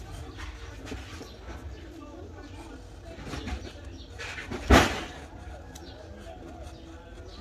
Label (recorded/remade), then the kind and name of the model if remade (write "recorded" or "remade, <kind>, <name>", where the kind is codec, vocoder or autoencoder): recorded